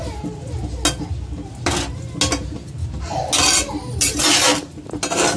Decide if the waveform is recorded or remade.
recorded